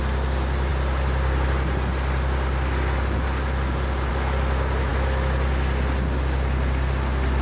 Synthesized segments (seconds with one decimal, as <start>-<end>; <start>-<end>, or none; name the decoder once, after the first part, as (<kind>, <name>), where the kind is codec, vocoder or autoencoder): none